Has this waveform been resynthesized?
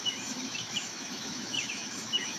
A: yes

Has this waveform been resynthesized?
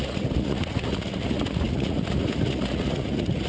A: yes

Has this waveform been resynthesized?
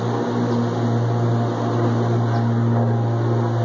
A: no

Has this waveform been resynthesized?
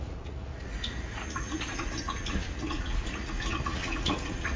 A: yes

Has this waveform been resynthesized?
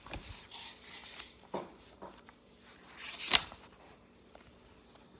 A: yes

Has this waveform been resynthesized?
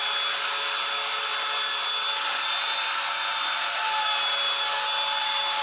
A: no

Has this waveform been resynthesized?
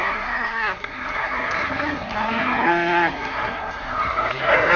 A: yes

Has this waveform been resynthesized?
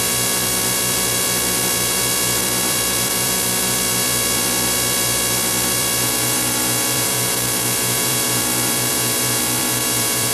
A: yes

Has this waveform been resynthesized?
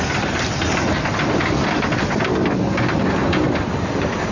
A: no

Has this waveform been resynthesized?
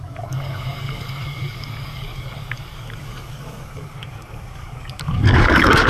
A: yes